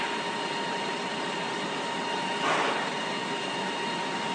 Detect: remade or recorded recorded